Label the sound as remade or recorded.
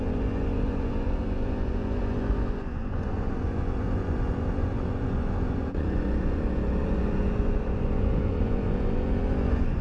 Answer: remade